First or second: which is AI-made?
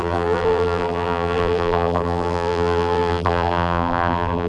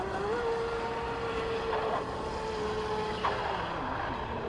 first